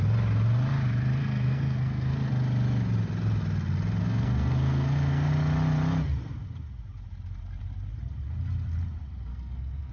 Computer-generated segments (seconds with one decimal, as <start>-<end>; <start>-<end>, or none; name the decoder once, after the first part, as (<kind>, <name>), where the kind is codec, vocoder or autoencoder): 1.2-2.3 (codec, SNAC); 4.0-5.3; 9.3-9.9